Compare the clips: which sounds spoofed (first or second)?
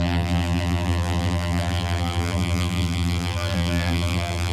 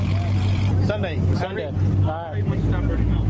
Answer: first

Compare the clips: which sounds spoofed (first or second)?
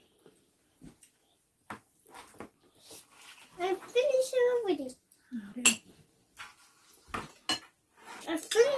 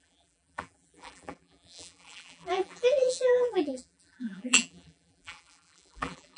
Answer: second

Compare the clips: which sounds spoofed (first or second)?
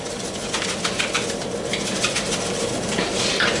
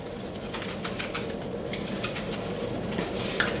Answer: second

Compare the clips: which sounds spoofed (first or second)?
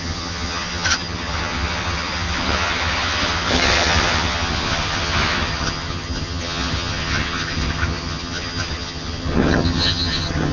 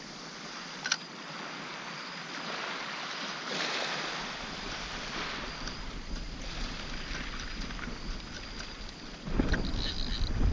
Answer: first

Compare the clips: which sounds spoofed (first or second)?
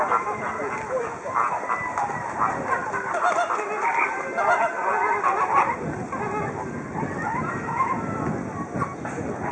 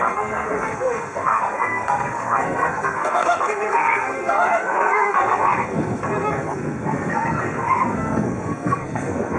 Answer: second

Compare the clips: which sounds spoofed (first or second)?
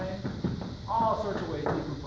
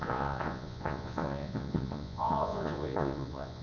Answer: second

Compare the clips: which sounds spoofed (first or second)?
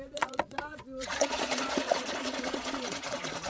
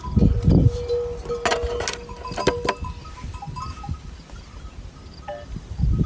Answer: first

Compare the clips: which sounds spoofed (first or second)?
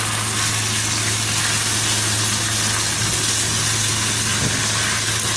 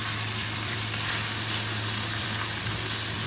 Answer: second